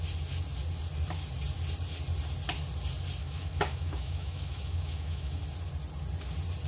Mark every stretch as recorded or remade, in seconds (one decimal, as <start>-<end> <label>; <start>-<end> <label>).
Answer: 0.0-3.2 recorded; 3.2-5.4 remade; 5.4-6.7 recorded